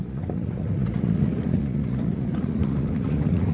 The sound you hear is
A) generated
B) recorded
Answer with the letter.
A